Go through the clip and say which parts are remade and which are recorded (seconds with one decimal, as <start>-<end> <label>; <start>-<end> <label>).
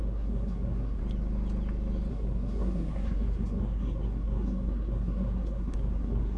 0.0-1.0 remade; 1.0-2.1 recorded; 2.1-6.4 remade